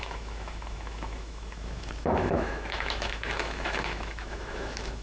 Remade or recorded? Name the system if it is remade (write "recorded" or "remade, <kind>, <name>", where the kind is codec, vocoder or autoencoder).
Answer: remade, autoencoder, DAC-VAE